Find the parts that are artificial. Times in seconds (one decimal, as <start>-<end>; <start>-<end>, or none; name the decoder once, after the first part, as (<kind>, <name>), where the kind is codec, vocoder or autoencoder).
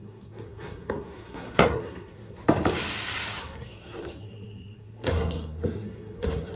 0.0-2.4 (codec, SNAC); 3.4-6.6